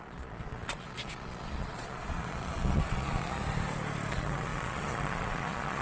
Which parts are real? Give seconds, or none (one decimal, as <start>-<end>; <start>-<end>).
3.4-4.1